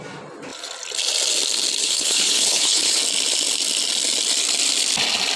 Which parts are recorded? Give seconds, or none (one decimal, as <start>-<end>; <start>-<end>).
0.0-1.8; 3.0-5.4

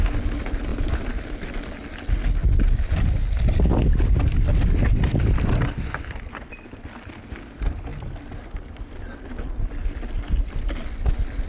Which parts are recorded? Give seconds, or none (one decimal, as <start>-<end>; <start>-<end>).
0.0-0.7; 1.3-2.4; 6.5-11.5